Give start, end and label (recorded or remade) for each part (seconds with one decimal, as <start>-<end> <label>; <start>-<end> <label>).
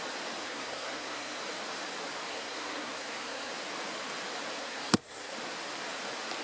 0.0-0.4 recorded; 0.4-1.4 remade; 1.4-2.3 recorded; 2.3-3.5 remade; 3.5-4.6 recorded; 4.6-5.3 remade; 5.3-6.4 recorded